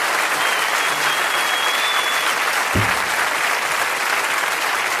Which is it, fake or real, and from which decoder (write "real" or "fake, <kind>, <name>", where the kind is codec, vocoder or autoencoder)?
real